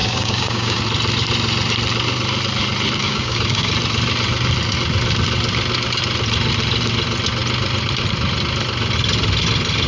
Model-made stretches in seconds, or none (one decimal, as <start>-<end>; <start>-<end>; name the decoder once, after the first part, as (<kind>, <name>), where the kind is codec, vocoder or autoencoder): 0.0-0.8 (codec, DAC); 3.0-3.7